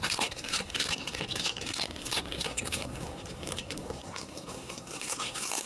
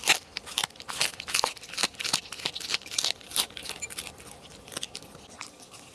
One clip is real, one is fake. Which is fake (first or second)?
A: first